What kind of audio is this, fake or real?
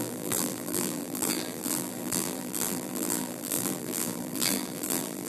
fake